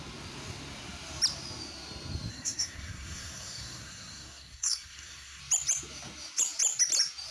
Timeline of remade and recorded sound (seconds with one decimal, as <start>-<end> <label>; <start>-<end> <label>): 0.0-2.3 recorded; 2.3-5.4 remade; 5.4-7.3 recorded